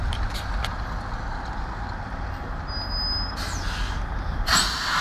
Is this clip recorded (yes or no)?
yes